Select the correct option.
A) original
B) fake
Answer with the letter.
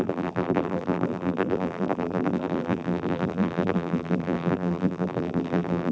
B